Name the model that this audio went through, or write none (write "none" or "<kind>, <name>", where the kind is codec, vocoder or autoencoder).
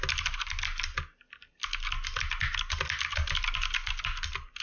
none